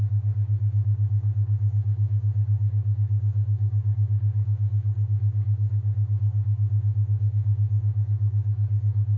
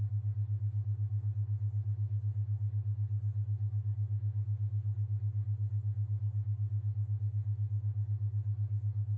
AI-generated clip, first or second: first